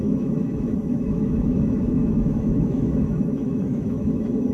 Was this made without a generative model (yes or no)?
no